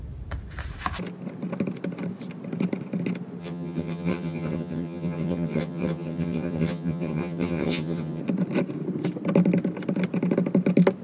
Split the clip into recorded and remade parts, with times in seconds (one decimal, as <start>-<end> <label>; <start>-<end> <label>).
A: 0.0-3.4 recorded; 3.4-8.2 remade; 8.2-11.0 recorded